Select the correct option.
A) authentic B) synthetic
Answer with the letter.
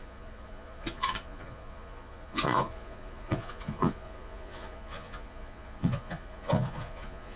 B